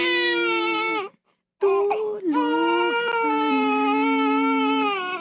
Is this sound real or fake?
real